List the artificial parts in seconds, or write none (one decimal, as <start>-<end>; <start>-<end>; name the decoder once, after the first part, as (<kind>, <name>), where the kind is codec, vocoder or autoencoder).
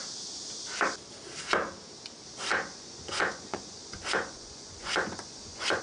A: 2.5-5.8 (vocoder, Vocos)